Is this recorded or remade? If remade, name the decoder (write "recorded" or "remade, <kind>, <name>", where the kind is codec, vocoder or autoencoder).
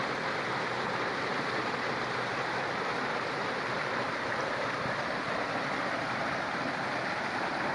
recorded